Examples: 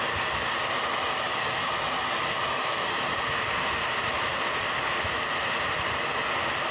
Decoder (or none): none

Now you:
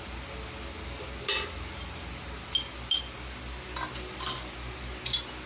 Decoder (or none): none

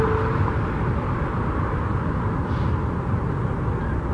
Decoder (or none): none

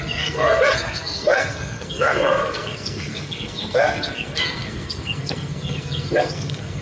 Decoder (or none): codec, SNAC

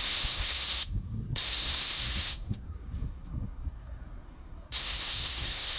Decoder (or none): codec, SNAC